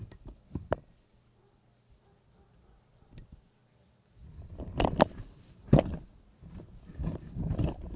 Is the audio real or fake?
real